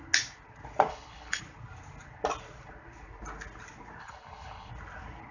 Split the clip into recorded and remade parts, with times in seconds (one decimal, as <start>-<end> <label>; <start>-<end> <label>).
0.0-0.9 recorded; 0.9-1.4 remade; 1.4-4.0 recorded; 4.0-4.7 remade; 4.7-5.3 recorded